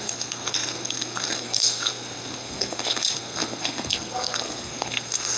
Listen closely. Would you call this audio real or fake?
fake